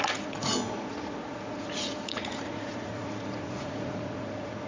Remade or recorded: remade